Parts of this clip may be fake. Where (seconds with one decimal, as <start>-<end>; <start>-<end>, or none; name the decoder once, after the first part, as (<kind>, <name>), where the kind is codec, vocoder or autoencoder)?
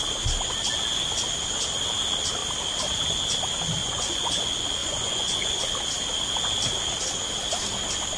3.8-4.3 (vocoder, Vocos); 4.8-5.6